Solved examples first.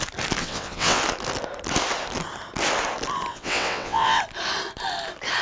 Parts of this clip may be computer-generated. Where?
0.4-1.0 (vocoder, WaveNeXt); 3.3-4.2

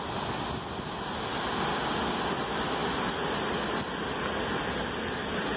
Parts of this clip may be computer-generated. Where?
none

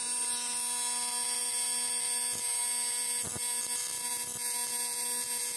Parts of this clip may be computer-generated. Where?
none

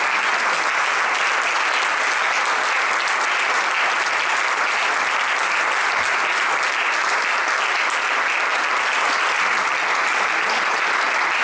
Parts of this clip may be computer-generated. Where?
none

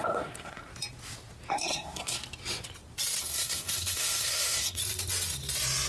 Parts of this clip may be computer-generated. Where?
0.0-0.7 (codec, SNAC); 1.5-2.2; 3.2-4.8

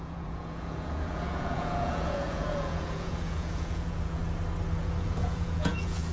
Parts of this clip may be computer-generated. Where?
0.0-4.2 (vocoder, Vocos); 4.8-6.1

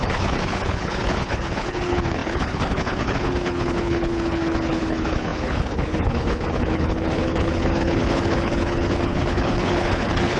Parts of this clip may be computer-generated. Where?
0.0-10.4 (codec, HILCodec)